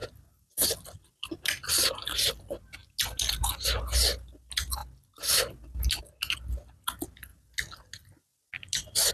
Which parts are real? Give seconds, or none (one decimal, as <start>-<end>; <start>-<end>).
0.0-9.1